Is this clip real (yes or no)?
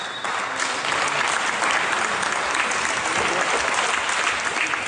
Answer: yes